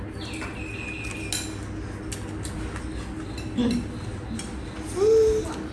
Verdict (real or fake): real